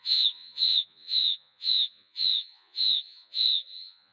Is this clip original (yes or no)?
no